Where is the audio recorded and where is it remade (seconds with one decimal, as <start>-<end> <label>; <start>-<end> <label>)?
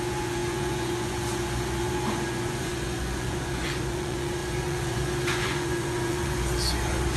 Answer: 0.0-7.2 remade